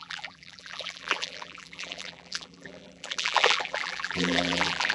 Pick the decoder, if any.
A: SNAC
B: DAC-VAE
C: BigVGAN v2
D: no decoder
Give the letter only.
C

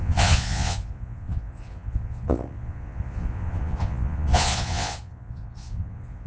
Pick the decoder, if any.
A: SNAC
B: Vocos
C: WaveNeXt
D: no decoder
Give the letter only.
B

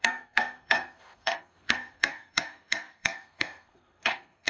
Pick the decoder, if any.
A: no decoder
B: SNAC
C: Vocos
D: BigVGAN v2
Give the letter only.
B